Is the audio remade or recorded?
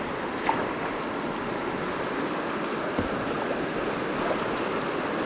recorded